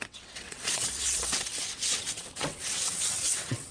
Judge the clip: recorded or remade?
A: remade